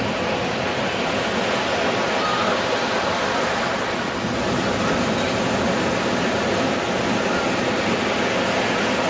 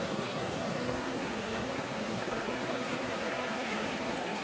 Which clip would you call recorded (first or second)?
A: first